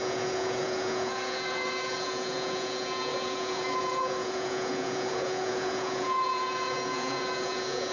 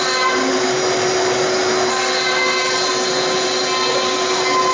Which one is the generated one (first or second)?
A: first